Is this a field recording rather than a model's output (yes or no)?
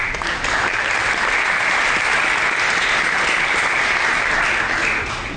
yes